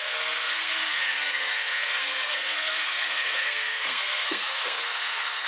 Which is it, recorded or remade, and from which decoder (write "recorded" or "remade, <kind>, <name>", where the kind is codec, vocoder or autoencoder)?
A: remade, codec, SNAC